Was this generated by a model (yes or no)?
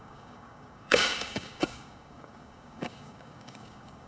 yes